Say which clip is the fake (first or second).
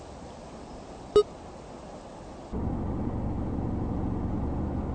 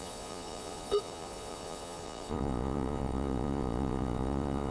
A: second